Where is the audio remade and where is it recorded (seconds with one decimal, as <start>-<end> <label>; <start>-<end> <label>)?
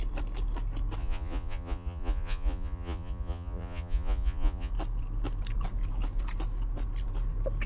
0.0-1.0 recorded; 1.0-4.7 remade; 4.7-7.7 recorded